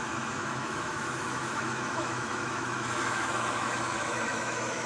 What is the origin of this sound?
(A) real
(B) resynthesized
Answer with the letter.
B